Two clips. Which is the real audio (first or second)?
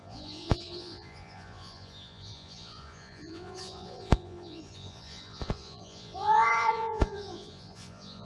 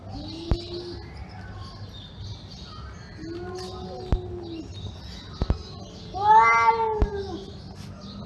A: second